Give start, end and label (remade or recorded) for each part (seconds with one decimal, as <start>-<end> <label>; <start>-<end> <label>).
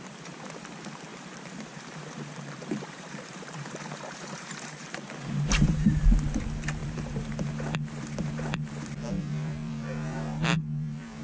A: 0.0-1.1 recorded; 1.1-6.0 remade; 6.0-6.8 recorded; 6.8-11.2 remade